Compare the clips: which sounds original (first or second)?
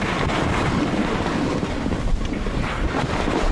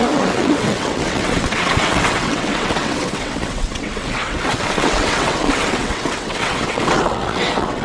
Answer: first